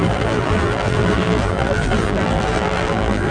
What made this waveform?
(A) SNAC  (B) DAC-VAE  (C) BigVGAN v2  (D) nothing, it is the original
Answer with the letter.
C